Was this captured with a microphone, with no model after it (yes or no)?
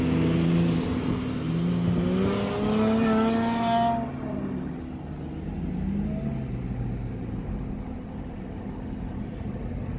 yes